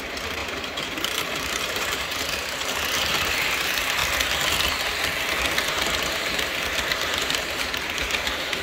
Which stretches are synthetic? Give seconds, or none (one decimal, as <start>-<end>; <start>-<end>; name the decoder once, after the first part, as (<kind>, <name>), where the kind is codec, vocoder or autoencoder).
0.0-4.0 (vocoder, BigVGAN v2); 5.7-8.6